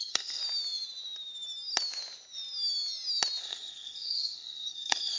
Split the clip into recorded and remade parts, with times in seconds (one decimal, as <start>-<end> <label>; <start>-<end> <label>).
0.0-0.4 remade; 0.4-3.4 recorded; 3.4-5.2 remade